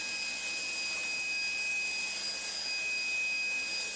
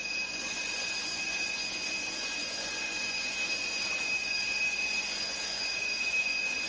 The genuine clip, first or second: first